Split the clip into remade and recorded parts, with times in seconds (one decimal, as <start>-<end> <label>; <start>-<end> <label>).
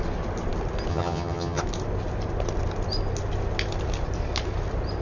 0.0-0.9 recorded; 0.9-1.6 remade; 1.6-5.0 recorded